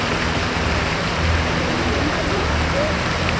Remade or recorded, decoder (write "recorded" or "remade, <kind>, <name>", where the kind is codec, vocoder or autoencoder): remade, vocoder, BigVGAN v2